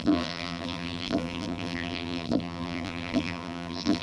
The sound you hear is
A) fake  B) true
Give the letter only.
A